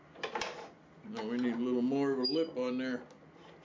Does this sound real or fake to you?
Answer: real